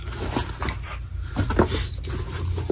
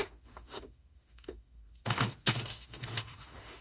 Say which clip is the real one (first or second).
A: first